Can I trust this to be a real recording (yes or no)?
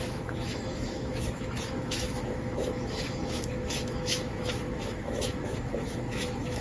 no